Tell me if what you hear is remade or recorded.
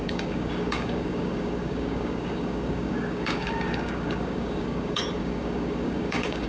remade